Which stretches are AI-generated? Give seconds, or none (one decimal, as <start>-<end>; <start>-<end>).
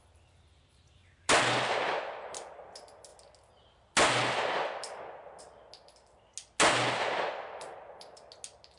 none